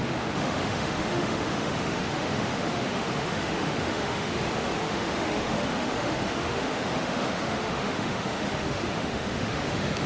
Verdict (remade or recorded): remade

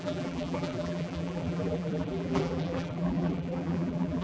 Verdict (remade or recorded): remade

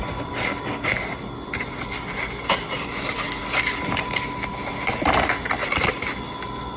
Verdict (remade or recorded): recorded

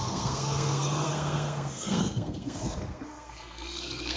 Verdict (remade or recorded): remade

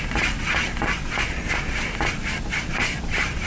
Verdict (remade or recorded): recorded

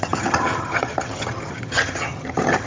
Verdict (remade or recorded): remade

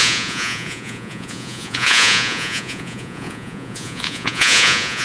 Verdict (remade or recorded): remade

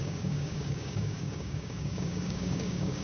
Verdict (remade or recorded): remade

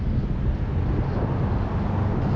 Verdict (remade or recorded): recorded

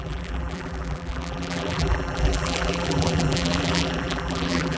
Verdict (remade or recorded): remade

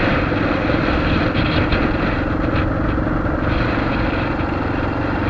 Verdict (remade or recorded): recorded